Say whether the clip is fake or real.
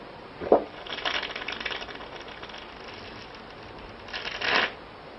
real